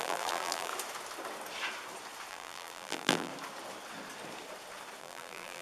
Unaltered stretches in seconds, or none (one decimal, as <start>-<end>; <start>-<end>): 0.7-2.3; 3.3-5.0